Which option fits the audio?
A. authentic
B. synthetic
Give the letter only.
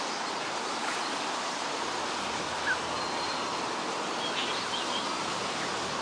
A